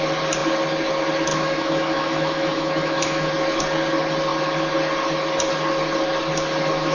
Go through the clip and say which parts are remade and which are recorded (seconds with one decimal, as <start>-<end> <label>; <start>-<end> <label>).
0.0-1.3 recorded; 1.3-3.3 remade; 3.3-6.9 recorded